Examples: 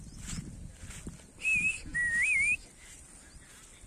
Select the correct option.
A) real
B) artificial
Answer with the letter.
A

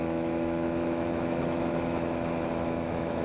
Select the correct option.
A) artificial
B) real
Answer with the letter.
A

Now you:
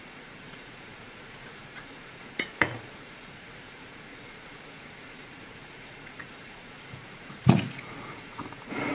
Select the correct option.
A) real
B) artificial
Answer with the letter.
B